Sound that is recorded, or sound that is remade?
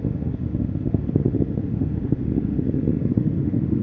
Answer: remade